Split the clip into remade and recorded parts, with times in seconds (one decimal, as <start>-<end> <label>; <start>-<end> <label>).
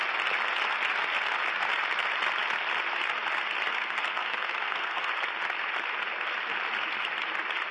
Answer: 0.0-3.7 recorded; 3.7-5.1 remade; 5.1-7.7 recorded